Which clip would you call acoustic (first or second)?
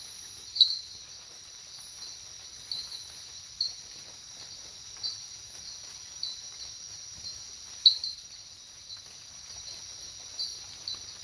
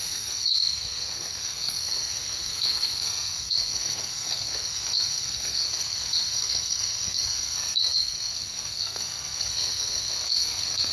first